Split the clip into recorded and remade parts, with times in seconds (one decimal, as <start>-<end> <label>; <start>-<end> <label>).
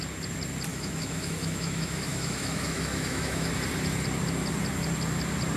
0.0-0.7 recorded; 0.7-3.5 remade; 3.5-5.6 recorded